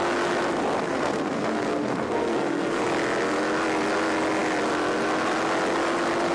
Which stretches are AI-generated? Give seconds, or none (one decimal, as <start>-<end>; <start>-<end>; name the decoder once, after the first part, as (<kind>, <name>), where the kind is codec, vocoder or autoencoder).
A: 0.8-2.8 (codec, SNAC)